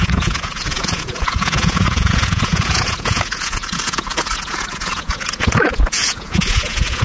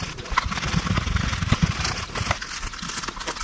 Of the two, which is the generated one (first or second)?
first